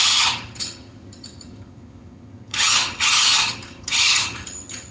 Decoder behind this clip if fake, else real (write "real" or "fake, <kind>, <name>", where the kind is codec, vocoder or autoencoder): fake, vocoder, HiFi-GAN